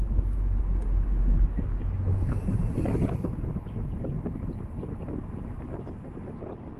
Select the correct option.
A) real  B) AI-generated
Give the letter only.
A